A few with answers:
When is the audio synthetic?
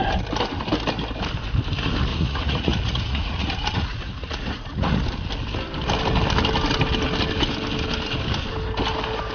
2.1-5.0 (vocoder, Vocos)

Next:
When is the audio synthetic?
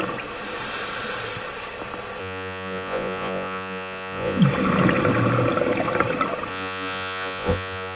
2.2-4.4 (vocoder, Vocos); 6.5-8.0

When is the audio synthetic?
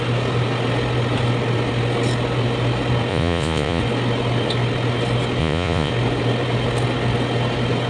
3.1-3.8 (vocoder, Vocos); 5.4-5.9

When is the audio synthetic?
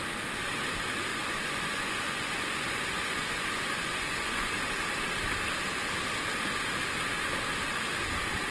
1.1-4.6 (vocoder, Vocos)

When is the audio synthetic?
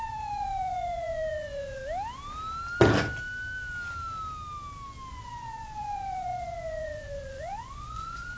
0.0-1.8 (vocoder, Vocos); 5.1-8.4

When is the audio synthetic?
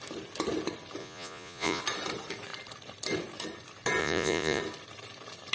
1.0-1.8 (vocoder, Vocos); 4.0-4.6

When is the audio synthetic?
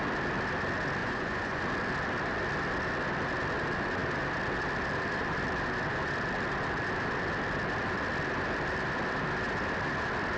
1.0-1.6 (vocoder, Vocos)